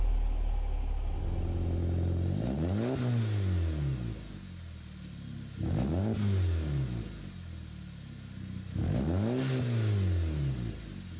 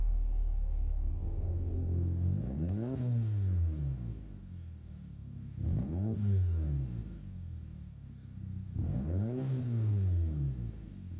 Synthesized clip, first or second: second